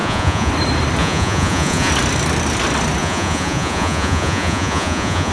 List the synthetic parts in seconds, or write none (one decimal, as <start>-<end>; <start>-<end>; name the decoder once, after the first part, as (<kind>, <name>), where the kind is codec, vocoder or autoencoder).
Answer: 0.0-0.5 (vocoder, Vocos); 1.0-1.9; 3.0-5.3